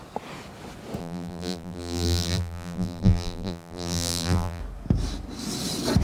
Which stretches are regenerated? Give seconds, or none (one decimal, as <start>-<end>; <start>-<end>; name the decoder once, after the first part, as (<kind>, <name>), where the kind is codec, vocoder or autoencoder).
1.0-4.6 (vocoder, BigVGAN v2)